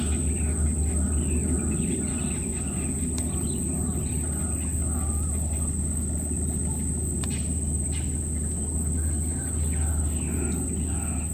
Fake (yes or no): no